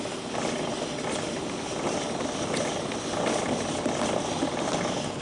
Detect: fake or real real